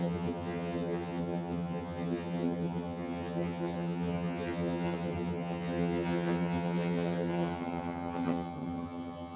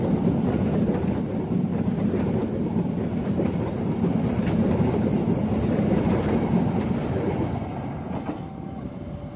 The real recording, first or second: second